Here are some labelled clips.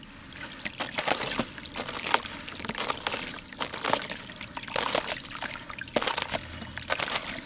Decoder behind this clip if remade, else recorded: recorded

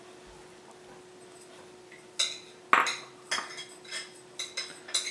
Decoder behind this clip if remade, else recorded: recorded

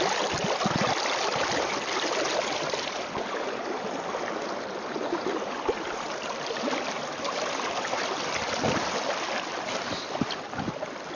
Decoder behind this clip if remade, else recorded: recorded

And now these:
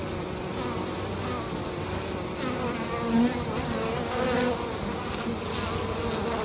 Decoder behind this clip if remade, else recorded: recorded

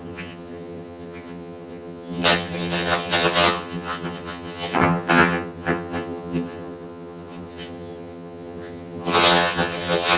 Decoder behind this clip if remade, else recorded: remade, vocoder, HiFi-GAN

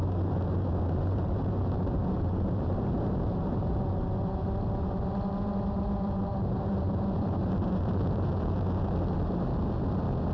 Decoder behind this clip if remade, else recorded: remade, vocoder, BigVGAN v2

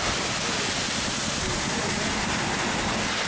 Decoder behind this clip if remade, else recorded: recorded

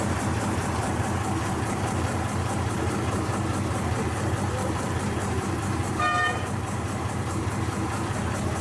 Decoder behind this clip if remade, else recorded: remade, vocoder, BigVGAN v2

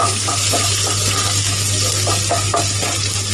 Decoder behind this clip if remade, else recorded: recorded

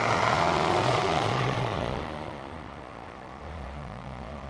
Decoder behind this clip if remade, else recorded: remade, vocoder, Vocos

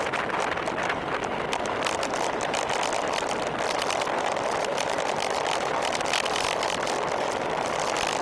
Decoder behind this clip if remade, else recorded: recorded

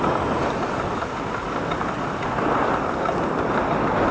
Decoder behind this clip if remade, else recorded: recorded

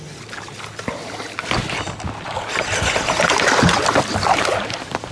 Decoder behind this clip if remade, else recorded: recorded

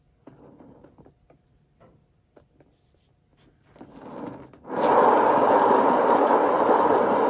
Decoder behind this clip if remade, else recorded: recorded